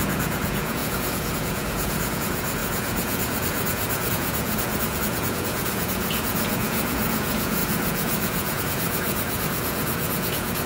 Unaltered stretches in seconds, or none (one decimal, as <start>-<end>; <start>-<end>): none